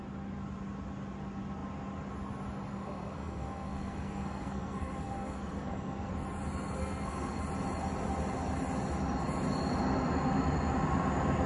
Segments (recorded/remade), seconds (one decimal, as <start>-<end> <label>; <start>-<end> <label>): 0.0-2.7 recorded; 2.7-6.1 remade; 6.1-6.8 recorded; 6.8-7.4 remade; 7.4-11.5 recorded